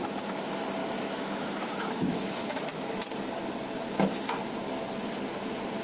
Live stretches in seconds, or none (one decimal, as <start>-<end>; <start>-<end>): 0.0-0.8; 2.8-5.8